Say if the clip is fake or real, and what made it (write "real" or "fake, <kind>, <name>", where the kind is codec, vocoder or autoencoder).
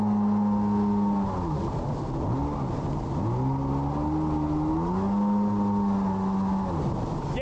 real